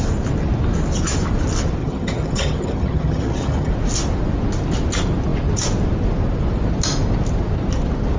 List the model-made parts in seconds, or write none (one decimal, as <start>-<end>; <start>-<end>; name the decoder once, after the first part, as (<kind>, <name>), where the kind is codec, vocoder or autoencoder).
1.8-3.7 (vocoder, HiFi-GAN)